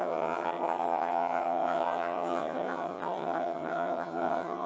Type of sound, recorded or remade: remade